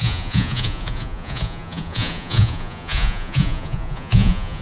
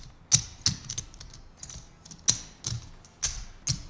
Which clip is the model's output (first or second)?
first